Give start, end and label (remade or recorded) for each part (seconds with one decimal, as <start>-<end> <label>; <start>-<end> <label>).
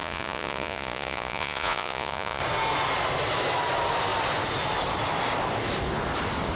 0.0-2.4 remade; 2.4-6.6 recorded